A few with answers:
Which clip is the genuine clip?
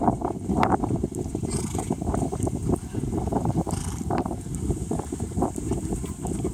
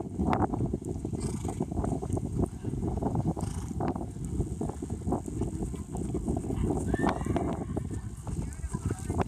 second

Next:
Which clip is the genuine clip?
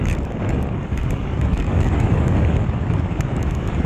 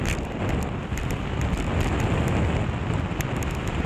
second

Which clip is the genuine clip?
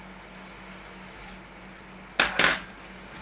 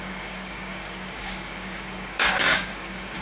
first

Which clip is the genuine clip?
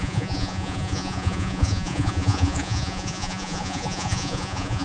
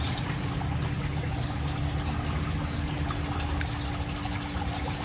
second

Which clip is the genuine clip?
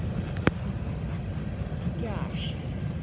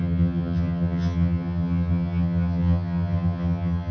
first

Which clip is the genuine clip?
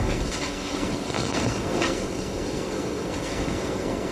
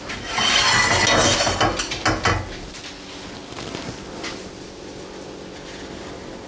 second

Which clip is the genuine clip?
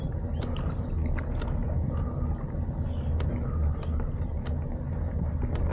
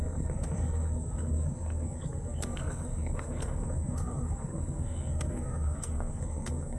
first